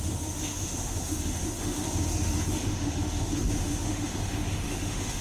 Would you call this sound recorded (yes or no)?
no